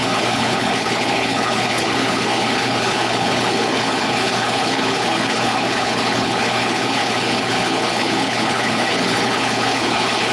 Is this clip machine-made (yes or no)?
yes